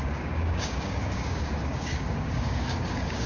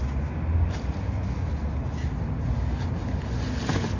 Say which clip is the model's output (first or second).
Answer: first